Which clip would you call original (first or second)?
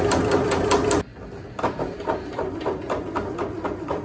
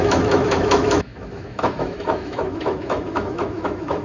first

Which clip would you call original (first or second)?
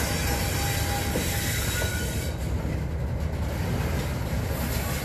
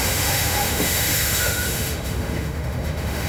first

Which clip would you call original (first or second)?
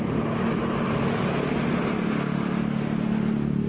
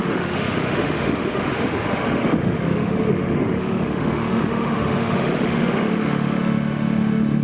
first